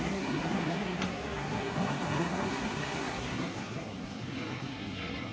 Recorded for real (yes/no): no